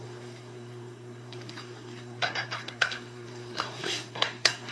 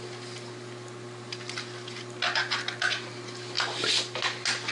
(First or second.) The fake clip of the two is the first